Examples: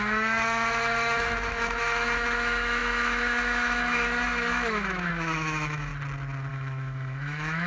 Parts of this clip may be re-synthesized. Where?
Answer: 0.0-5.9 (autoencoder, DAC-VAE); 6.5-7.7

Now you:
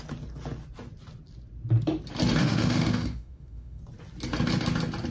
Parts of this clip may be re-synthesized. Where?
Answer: 2.4-3.8 (autoencoder, DAC-VAE)

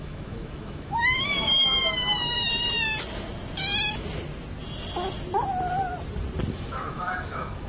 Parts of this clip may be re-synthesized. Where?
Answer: 0.0-2.5 (autoencoder, DAC-VAE); 6.5-7.7

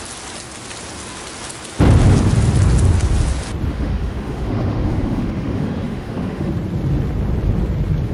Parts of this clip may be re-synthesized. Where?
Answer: 3.7-6.5 (autoencoder, DAC-VAE)